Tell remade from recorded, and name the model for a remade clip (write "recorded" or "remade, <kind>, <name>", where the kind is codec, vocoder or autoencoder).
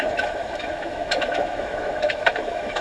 remade, autoencoder, DAC-VAE